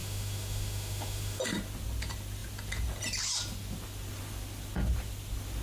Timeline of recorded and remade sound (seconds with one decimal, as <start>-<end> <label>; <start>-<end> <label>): 0.0-1.4 remade; 1.4-5.6 recorded